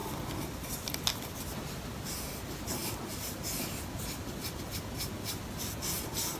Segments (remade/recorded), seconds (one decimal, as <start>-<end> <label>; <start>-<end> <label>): 0.0-6.4 recorded